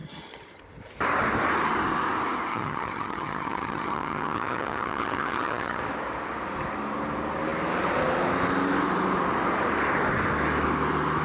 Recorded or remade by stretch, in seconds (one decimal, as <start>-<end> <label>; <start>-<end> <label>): 0.0-0.6 remade; 0.6-2.5 recorded; 2.5-5.8 remade; 5.8-11.2 recorded